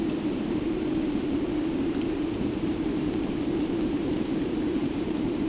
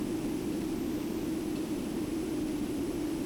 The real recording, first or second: second